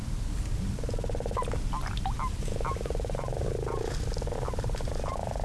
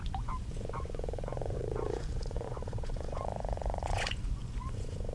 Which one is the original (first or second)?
first